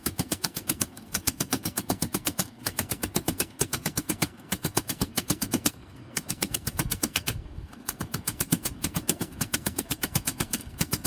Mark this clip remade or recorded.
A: remade